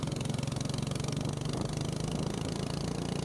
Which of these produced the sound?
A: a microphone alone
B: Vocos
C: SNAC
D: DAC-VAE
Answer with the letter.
A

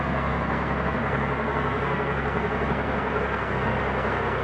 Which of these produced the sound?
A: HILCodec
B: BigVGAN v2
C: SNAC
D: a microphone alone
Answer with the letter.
C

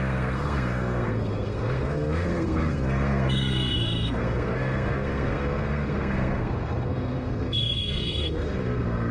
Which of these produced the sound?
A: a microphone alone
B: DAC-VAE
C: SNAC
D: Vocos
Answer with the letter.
C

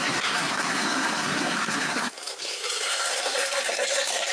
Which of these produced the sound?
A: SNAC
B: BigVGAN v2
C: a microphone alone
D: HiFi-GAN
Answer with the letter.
A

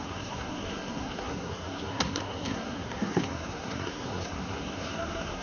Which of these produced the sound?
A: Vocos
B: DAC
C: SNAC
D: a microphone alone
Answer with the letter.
C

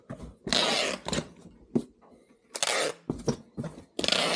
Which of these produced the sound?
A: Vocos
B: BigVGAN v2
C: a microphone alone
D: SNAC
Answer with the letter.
C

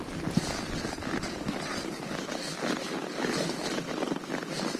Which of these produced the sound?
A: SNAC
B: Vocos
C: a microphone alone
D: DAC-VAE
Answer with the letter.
C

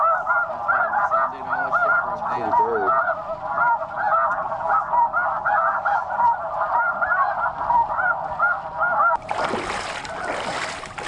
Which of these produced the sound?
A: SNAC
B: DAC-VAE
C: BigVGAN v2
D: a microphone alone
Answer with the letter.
D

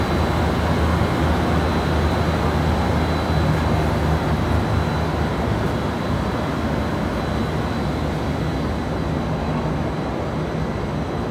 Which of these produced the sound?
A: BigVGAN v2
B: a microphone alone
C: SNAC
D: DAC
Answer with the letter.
B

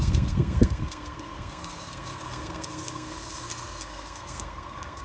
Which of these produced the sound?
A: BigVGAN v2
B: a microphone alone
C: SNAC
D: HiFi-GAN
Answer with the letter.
C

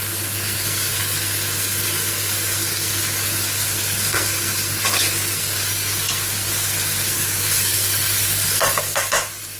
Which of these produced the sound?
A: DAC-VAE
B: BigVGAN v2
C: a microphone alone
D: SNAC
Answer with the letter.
D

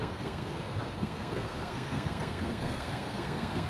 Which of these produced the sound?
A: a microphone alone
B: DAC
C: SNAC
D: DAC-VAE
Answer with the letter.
C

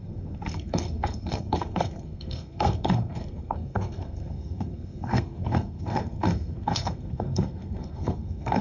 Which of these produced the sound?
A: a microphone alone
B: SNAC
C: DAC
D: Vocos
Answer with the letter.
B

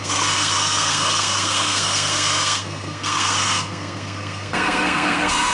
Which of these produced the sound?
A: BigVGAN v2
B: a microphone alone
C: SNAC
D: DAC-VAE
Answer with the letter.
C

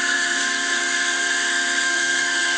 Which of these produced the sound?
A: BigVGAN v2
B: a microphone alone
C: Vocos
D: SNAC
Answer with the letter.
D